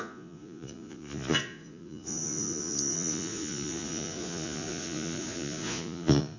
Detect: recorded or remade remade